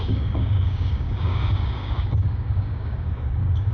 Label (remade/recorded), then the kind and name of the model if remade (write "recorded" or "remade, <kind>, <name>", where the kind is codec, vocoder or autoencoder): remade, codec, DAC